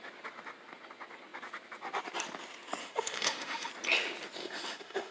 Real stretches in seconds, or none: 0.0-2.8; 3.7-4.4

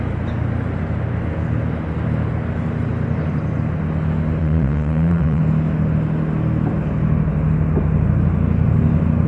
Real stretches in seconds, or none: 0.0-4.4; 5.4-9.3

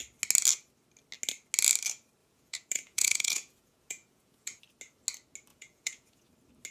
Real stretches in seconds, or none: 0.0-2.2; 4.6-5.5; 6.3-6.7

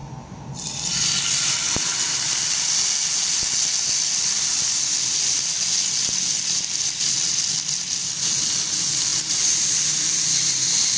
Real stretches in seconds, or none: 1.9-11.0

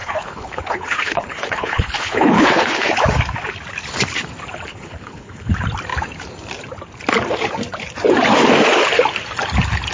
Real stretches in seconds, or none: 2.9-4.7; 5.5-9.9

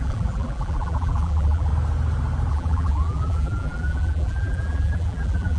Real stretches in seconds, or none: 1.7-2.5

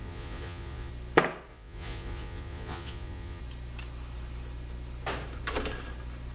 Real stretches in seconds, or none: 0.9-1.5; 3.4-6.3

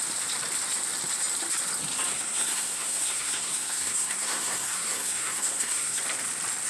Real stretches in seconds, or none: 0.0-2.1; 6.0-6.7